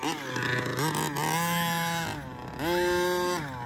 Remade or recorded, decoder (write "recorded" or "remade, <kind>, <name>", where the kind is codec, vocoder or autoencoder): recorded